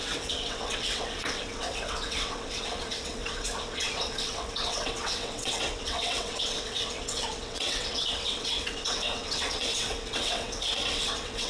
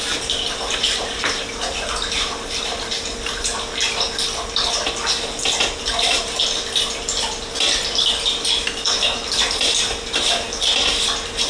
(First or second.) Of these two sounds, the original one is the second